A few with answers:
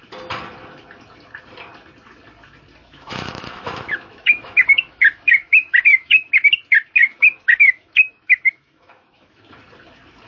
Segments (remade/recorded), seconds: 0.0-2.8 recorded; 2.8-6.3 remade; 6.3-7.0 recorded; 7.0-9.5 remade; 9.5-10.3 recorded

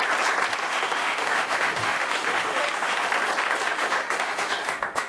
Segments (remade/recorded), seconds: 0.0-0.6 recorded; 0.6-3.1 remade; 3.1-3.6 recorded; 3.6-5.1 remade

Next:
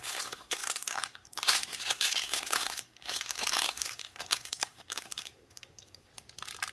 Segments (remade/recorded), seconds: 0.0-6.1 remade; 6.1-6.7 recorded